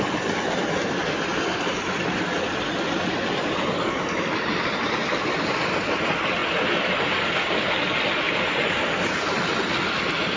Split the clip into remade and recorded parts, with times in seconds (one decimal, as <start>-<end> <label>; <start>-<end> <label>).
0.0-10.4 recorded